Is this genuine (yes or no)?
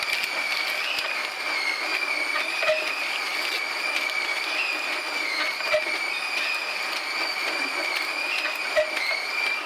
yes